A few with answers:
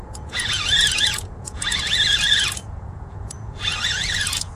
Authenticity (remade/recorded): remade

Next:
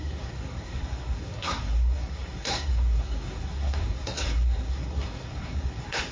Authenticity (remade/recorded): remade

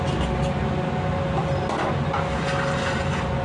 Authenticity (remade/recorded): recorded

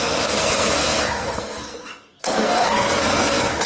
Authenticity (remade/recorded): remade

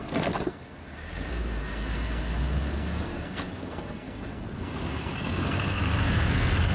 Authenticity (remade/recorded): remade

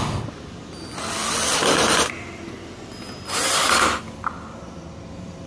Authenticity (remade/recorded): recorded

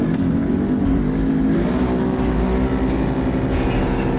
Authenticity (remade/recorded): recorded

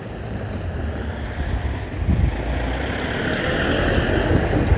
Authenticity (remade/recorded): recorded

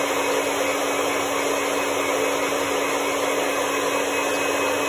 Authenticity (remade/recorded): recorded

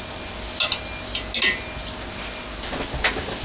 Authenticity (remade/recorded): recorded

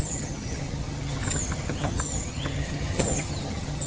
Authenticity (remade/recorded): remade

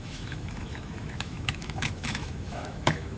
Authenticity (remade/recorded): remade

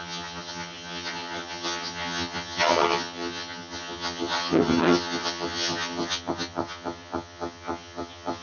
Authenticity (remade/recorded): remade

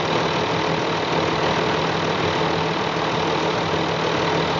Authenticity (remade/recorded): recorded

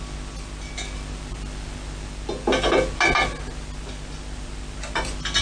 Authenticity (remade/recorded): recorded